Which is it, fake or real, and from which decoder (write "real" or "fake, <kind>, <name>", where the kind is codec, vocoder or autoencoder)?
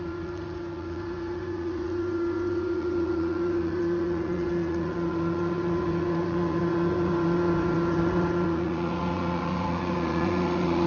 fake, vocoder, Vocos